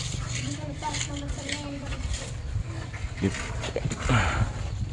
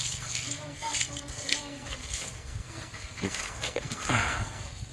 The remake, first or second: second